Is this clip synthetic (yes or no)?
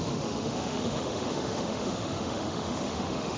yes